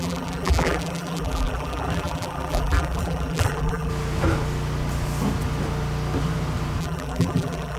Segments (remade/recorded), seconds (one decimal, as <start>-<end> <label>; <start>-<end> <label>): 0.0-3.9 remade; 3.9-6.8 recorded; 6.8-7.8 remade